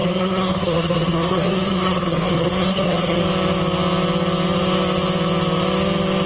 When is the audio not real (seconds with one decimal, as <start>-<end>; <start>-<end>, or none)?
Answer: 0.0-3.2